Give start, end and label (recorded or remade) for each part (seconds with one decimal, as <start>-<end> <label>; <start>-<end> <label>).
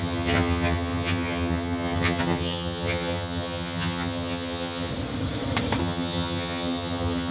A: 0.0-4.9 remade; 4.9-5.8 recorded; 5.8-7.3 remade